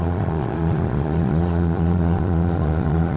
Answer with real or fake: fake